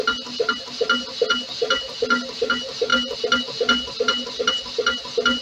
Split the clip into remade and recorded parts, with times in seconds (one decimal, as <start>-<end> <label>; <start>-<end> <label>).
0.0-5.4 recorded

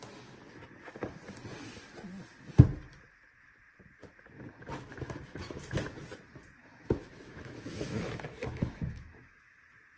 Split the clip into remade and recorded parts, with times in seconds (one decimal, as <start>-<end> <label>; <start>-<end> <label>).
0.0-4.9 recorded; 4.9-5.6 remade; 5.6-6.6 recorded; 6.6-9.6 remade; 9.6-10.0 recorded

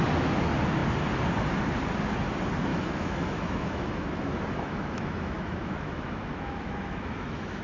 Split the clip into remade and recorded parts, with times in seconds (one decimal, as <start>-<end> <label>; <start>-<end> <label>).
0.0-2.7 recorded; 2.7-7.6 remade

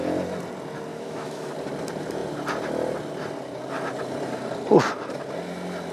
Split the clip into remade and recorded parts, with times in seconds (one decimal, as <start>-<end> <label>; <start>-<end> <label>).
0.0-0.9 recorded; 0.9-1.5 remade; 1.5-5.9 recorded

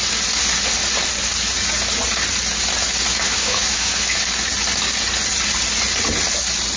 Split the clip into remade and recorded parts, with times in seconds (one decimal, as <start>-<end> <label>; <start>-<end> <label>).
0.0-3.1 recorded; 3.1-4.2 remade; 4.2-6.8 recorded

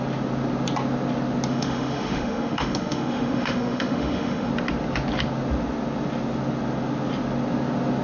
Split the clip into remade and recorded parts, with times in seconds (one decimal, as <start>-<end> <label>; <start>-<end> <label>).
0.0-1.5 recorded; 1.5-4.5 remade; 4.5-8.0 recorded

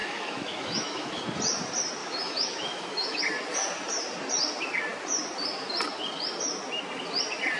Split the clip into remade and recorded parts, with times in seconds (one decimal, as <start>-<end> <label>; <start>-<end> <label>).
0.0-1.2 remade; 1.2-2.0 recorded; 2.0-3.2 remade; 3.2-7.6 recorded